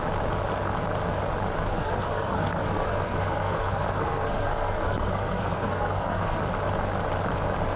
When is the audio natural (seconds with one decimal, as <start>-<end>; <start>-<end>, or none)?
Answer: 0.0-1.7; 6.4-7.8